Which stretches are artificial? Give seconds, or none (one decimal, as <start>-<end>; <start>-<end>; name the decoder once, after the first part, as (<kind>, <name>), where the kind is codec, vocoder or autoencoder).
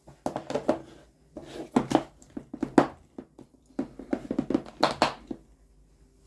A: none